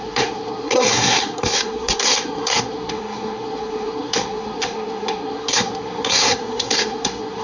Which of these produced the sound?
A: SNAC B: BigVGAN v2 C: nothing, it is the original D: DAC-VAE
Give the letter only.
A